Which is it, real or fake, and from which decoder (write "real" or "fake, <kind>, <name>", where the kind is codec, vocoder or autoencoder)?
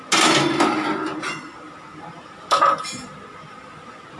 real